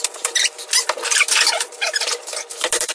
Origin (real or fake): fake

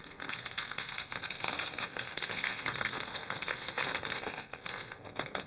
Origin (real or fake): fake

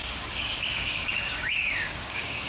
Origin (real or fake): fake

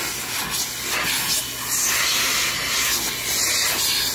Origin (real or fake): real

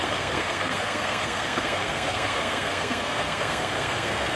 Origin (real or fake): fake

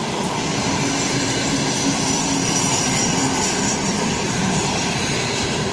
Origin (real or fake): fake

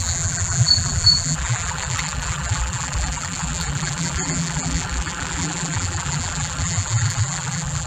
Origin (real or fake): fake